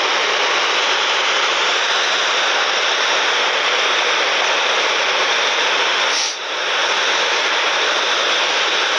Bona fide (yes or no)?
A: yes